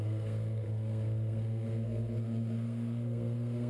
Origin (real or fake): fake